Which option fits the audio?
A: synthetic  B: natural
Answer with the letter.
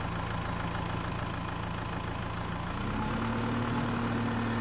B